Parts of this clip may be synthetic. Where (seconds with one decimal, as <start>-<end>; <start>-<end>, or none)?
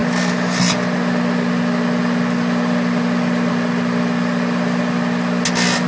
none